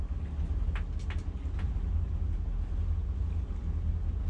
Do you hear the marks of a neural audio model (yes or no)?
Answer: no